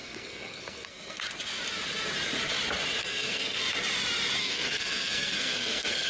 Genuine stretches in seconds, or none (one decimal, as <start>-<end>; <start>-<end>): 1.2-3.0; 3.6-4.4